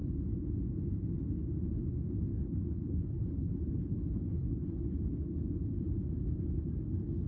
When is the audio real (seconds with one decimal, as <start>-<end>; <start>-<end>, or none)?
0.0-2.3; 5.4-7.3